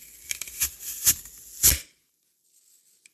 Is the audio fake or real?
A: real